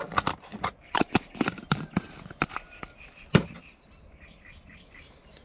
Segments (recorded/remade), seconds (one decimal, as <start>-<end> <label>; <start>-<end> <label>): 0.0-5.4 recorded